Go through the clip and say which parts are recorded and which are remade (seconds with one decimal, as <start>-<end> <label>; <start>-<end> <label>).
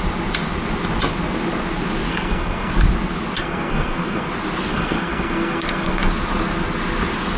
0.0-2.1 recorded; 2.1-2.7 remade; 2.7-3.4 recorded; 3.4-4.3 remade; 4.3-4.7 recorded; 4.7-6.1 remade; 6.1-7.4 recorded